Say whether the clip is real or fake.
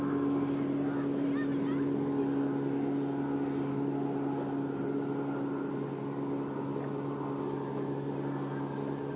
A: real